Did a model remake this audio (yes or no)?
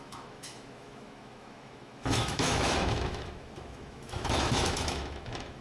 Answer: yes